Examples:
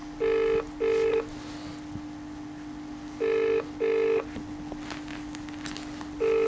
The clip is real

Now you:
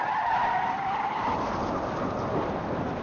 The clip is real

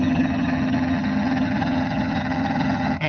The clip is fake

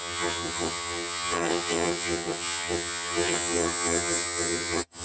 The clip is fake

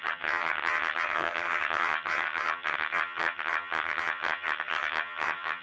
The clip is fake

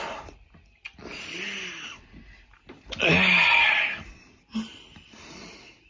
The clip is real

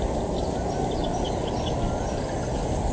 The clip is real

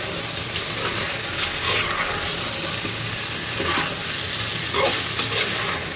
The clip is real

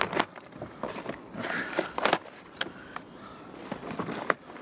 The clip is real